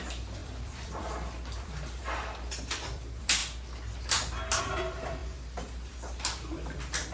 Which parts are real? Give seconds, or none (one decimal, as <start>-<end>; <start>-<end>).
3.4-4.6